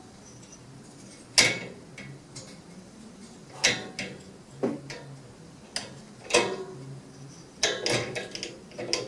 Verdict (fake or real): real